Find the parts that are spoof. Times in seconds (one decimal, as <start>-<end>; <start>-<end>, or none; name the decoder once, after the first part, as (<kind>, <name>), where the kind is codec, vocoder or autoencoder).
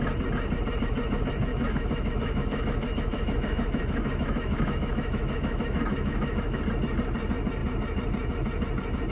1.5-6.6 (autoencoder, DAC-VAE)